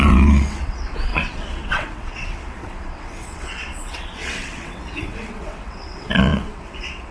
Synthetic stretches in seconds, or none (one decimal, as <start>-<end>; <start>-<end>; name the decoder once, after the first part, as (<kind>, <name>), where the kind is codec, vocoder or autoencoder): 0.0-7.1 (vocoder, WaveNeXt)